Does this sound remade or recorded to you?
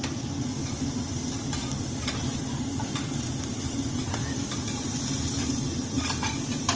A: remade